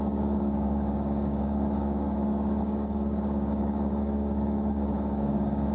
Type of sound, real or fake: fake